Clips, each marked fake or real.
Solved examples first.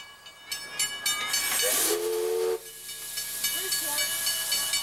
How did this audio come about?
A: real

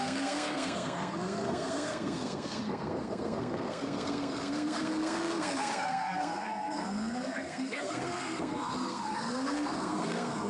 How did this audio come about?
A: fake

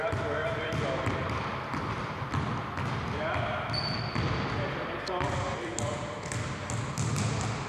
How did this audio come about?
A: real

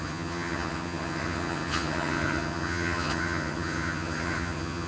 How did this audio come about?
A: fake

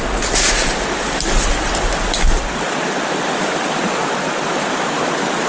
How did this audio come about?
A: real